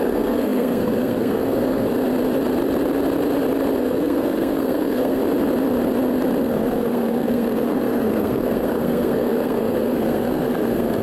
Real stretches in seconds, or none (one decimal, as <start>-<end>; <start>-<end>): 1.9-3.8; 5.2-6.4